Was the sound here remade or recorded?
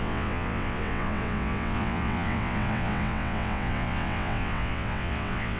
remade